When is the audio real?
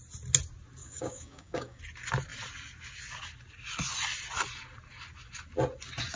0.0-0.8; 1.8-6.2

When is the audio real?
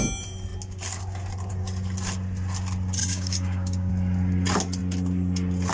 0.0-3.0; 3.9-5.7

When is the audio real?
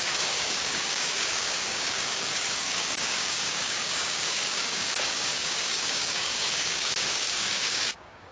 none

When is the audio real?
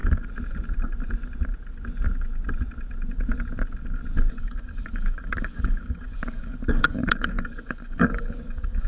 0.0-4.3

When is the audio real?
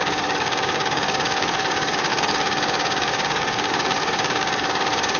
none